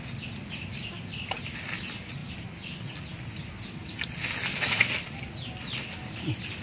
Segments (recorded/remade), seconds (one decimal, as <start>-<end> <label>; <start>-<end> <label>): 0.0-6.6 recorded